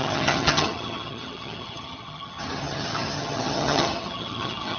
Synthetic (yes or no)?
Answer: yes